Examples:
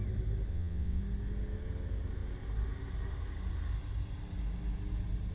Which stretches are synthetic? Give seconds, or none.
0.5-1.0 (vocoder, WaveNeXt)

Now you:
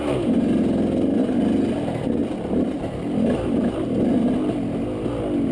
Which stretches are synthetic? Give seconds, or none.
none

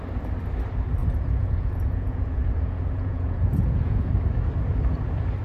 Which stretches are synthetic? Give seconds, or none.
1.0-4.1 (vocoder, Vocos)

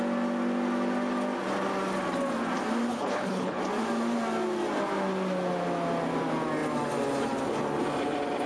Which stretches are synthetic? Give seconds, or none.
2.9-3.6 (codec, HILCodec)

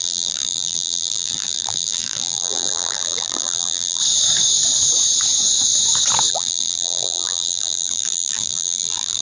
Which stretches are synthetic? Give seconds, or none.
0.0-4.0 (vocoder, BigVGAN v2); 6.3-9.2

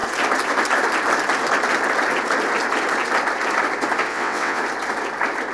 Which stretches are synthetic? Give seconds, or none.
4.1-4.6 (vocoder, WaveNeXt)

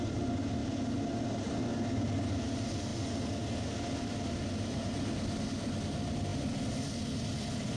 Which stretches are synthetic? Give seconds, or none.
none

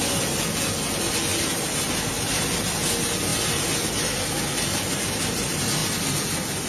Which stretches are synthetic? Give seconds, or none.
none